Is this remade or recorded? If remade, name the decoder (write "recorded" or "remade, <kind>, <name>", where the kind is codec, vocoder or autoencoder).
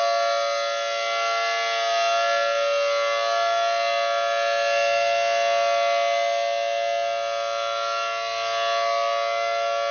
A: recorded